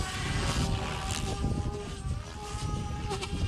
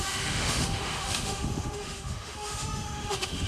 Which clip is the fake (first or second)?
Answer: second